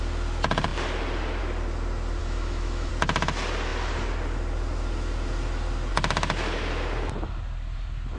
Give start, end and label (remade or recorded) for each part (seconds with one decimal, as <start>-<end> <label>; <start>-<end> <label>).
0.0-2.2 recorded; 2.2-2.9 remade; 2.9-8.2 recorded